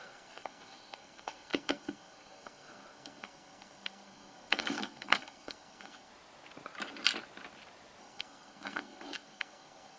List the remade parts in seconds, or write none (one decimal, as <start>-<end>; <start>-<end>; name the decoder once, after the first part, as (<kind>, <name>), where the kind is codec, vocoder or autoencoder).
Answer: 0.0-6.1 (codec, SNAC); 8.0-10.0